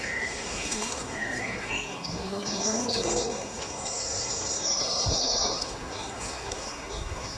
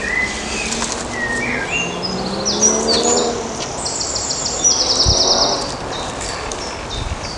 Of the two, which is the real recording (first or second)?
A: second